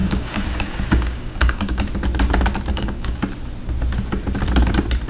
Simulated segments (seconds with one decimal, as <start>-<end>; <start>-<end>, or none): 0.0-1.8; 2.7-3.2